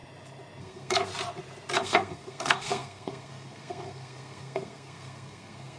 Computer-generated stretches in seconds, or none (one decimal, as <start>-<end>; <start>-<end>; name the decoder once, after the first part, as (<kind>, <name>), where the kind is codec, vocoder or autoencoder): 0.6-1.1 (codec, SNAC); 1.8-5.8